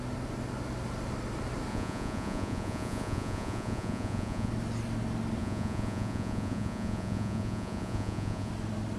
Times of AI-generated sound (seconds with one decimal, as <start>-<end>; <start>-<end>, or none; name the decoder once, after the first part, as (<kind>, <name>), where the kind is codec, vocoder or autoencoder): 1.7-4.5 (vocoder, Vocos); 5.4-8.5